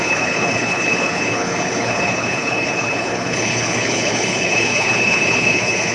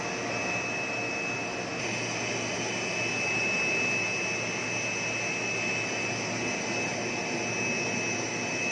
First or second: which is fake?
first